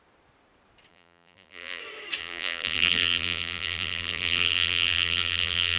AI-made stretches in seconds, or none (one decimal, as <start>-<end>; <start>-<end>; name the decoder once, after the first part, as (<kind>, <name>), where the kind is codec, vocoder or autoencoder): 0.9-1.8 (vocoder, BigVGAN v2); 2.2-5.8